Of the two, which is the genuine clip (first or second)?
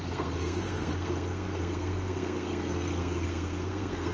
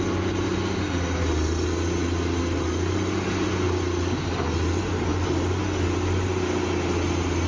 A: second